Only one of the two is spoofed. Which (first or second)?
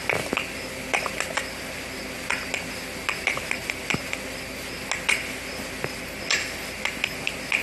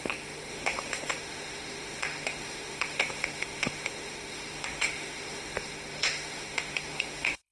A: second